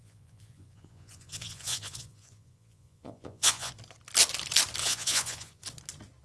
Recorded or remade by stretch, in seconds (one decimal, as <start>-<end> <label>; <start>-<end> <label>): 0.0-3.7 remade; 3.7-4.8 recorded; 4.8-5.6 remade; 5.6-6.2 recorded